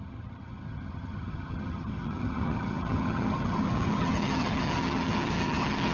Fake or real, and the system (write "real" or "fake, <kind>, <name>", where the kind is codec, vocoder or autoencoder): fake, vocoder, HiFi-GAN